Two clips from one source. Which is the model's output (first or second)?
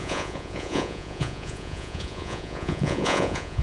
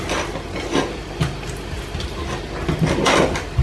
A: first